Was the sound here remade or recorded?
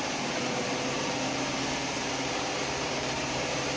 remade